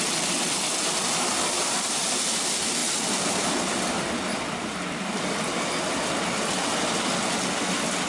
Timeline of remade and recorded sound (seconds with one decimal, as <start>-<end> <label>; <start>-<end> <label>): 0.0-8.1 recorded